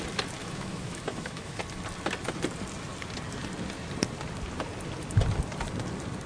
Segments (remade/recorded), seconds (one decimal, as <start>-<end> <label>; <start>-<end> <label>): 0.0-0.4 recorded; 0.4-1.6 remade; 1.6-6.3 recorded